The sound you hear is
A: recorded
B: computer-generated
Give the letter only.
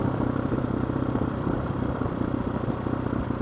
B